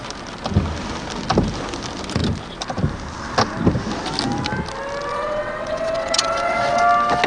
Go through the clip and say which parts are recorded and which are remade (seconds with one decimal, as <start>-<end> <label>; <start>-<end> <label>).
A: 0.0-5.1 recorded; 5.1-6.8 remade; 6.8-7.3 recorded